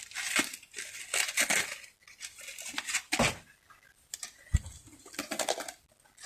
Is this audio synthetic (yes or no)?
no